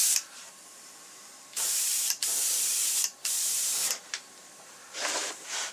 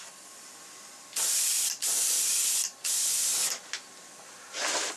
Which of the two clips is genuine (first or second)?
second